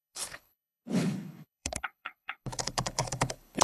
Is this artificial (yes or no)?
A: yes